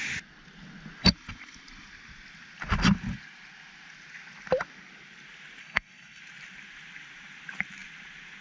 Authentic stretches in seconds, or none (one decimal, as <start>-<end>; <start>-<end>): 0.0-5.6; 6.2-8.4